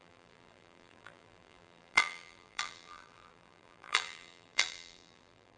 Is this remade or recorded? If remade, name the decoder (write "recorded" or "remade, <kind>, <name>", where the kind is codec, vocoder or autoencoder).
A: remade, vocoder, BigVGAN v2